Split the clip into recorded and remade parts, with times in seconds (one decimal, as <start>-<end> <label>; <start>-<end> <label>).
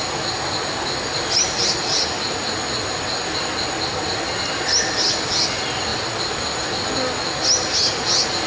0.0-8.5 recorded